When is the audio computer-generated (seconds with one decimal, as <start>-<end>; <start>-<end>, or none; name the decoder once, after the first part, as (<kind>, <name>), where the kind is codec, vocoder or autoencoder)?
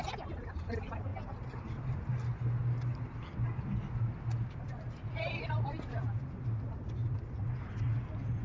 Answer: 1.1-1.7 (vocoder, BigVGAN v2)